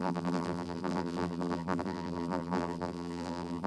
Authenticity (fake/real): fake